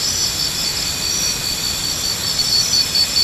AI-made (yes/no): no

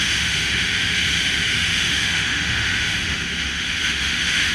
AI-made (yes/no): yes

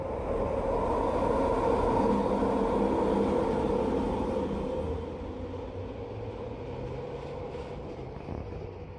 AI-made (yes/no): no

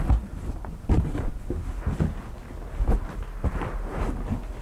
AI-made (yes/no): no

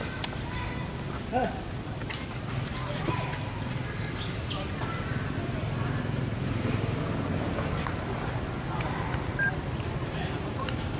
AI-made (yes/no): no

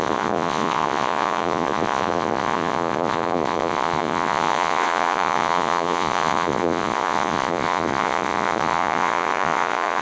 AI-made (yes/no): yes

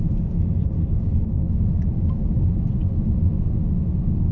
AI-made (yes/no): no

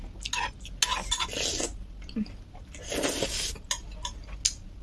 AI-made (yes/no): no